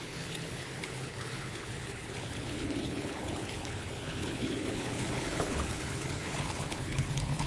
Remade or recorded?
remade